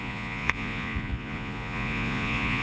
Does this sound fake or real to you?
fake